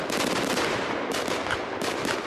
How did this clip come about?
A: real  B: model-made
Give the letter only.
A